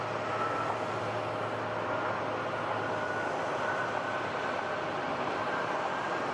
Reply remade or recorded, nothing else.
recorded